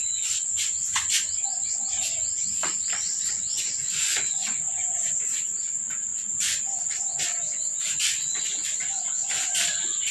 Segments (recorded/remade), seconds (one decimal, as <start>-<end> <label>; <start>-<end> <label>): 0.0-5.1 remade; 5.1-6.1 recorded; 6.1-6.6 remade; 6.6-10.1 recorded